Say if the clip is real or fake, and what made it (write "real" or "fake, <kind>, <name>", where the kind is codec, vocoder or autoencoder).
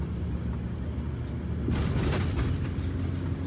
real